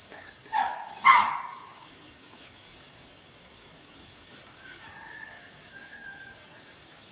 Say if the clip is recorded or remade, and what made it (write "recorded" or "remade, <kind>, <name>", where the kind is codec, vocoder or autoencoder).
remade, codec, DAC